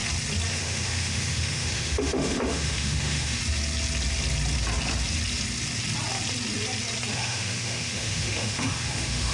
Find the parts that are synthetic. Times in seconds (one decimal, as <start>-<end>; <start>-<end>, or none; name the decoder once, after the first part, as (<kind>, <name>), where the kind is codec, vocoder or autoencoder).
0.5-3.4 (autoencoder, DAC-VAE); 7.1-9.3